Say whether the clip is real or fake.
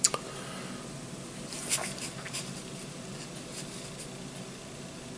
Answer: real